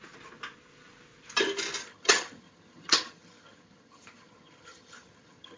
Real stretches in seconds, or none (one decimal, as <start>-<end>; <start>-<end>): 0.0-1.8